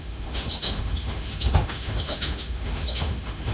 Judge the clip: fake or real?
fake